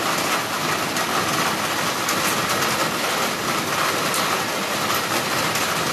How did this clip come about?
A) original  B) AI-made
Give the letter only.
A